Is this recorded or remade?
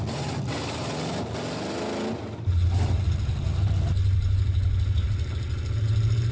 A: recorded